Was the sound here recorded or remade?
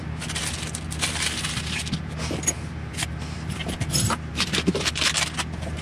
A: recorded